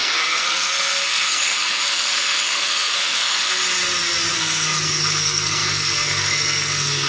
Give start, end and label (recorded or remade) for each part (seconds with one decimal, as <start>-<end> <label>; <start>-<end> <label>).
0.0-3.6 remade; 3.6-4.3 recorded; 4.3-7.1 remade